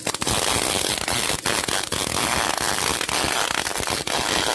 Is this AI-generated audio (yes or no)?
no